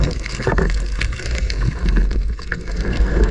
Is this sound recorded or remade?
remade